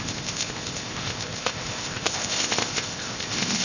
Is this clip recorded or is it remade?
remade